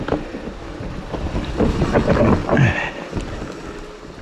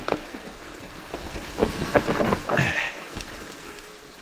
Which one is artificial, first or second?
second